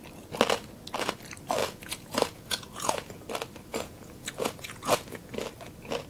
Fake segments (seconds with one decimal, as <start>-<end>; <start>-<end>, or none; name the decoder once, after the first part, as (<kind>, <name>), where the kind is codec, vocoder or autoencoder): 1.6-3.3 (vocoder, Vocos); 3.7-5.4